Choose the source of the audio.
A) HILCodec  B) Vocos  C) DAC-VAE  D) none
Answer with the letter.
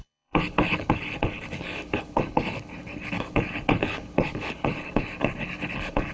A